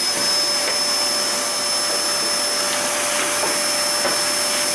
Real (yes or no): yes